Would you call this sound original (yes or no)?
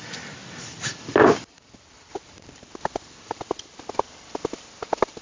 no